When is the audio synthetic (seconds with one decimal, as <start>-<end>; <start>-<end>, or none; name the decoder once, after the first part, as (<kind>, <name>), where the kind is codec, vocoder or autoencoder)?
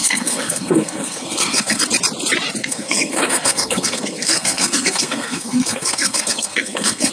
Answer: 0.0-1.8 (codec, SNAC); 2.6-7.1